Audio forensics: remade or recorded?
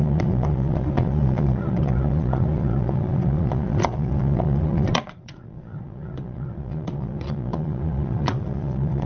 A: remade